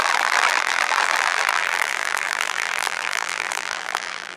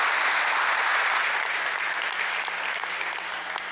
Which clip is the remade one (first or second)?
first